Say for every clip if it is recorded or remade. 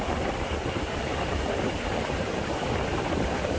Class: remade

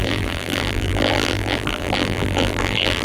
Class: remade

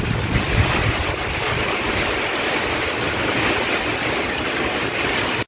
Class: recorded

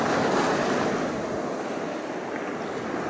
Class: recorded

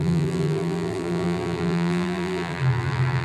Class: remade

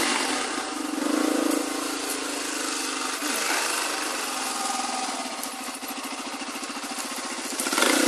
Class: recorded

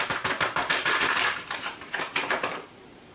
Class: remade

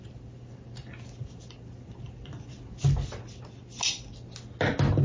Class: recorded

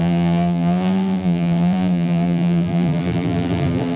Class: remade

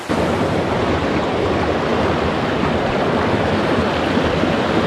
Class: remade